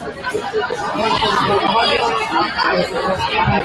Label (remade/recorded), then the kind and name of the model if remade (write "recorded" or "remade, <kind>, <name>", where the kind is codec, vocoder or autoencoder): recorded